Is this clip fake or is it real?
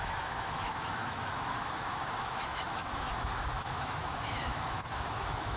fake